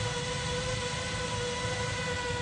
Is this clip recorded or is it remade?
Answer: recorded